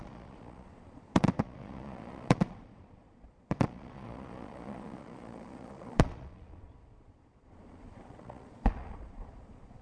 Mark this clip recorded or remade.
remade